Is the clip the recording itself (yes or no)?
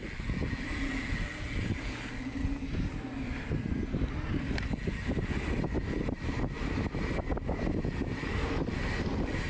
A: yes